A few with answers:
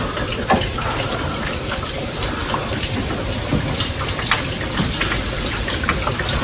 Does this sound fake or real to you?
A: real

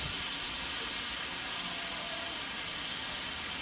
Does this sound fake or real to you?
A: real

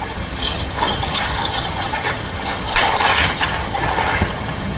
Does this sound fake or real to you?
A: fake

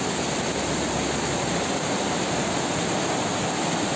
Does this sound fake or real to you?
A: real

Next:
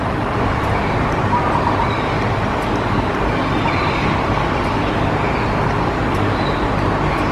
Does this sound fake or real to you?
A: real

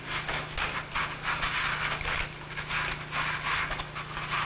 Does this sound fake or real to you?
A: real